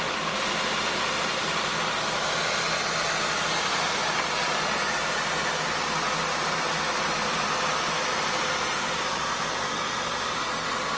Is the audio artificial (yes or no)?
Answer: no